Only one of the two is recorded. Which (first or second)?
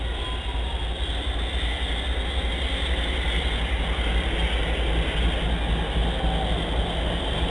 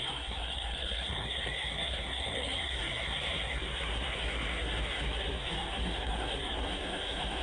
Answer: first